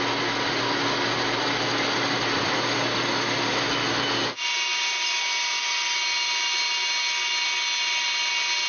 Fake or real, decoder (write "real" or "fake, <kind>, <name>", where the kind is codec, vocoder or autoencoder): real